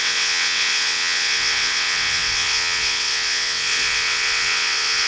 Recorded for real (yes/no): no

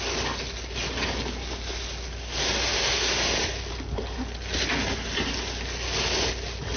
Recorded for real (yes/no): yes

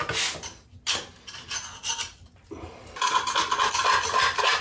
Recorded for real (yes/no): yes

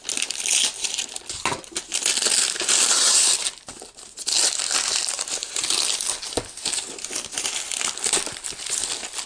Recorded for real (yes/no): yes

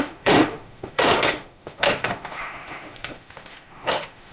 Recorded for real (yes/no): no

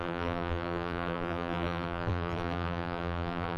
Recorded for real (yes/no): no